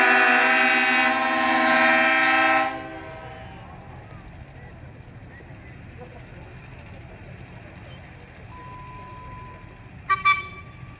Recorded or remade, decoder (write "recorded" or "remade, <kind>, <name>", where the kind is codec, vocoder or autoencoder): recorded